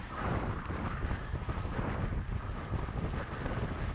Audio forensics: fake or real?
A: real